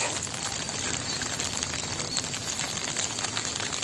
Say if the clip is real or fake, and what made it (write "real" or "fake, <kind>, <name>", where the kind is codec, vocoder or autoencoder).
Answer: real